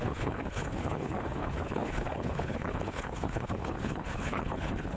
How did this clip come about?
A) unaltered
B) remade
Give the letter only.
B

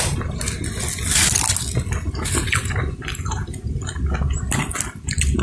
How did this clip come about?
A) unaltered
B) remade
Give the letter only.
A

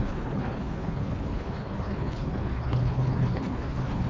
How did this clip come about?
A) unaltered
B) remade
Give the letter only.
B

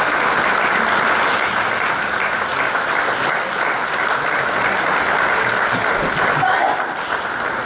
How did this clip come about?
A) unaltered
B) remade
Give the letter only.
A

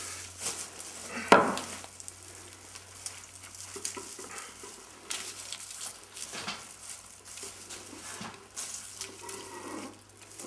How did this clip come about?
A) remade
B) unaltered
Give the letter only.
B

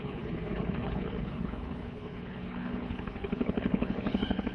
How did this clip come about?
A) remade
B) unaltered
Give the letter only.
A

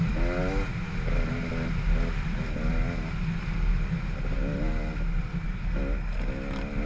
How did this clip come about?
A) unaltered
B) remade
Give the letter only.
A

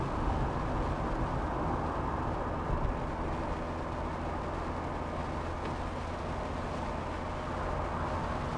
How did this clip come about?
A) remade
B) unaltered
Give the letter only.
B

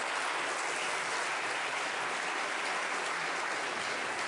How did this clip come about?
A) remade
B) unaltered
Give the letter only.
B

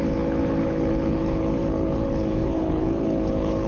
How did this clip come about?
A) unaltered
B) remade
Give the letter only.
B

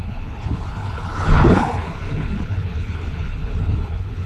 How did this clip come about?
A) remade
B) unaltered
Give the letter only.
A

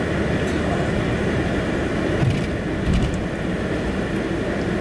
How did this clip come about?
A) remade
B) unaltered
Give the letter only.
B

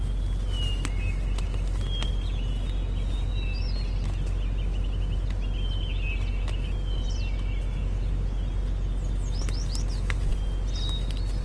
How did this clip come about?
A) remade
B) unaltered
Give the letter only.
B